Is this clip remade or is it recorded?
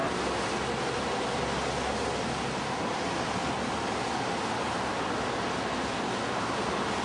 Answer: recorded